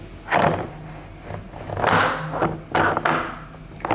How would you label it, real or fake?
real